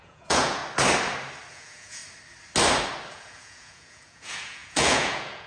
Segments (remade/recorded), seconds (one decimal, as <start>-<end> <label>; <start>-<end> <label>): 0.0-0.6 remade; 0.6-1.5 recorded; 1.5-2.0 remade; 2.0-3.1 recorded; 3.1-5.5 remade